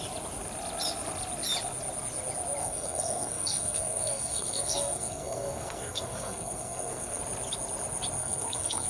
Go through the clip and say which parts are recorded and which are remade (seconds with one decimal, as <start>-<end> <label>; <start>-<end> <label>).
0.0-2.6 recorded; 2.6-7.2 remade; 7.2-8.2 recorded; 8.2-8.9 remade